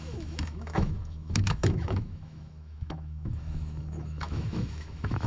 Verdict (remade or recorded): remade